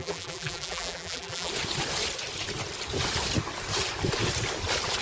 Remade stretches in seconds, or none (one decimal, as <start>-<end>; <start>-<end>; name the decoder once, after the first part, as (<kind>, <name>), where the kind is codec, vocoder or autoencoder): 0.0-1.5 (vocoder, BigVGAN v2)